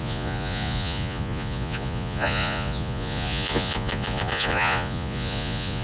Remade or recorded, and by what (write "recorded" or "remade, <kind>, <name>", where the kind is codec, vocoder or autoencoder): remade, vocoder, Vocos